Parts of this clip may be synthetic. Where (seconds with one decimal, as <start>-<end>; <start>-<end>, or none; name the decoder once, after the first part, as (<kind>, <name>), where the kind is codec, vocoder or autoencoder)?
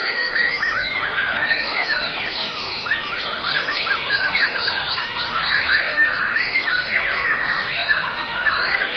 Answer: 0.0-9.0 (autoencoder, DAC-VAE)